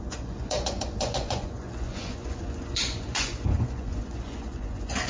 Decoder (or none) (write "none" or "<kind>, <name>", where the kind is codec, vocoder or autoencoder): vocoder, Vocos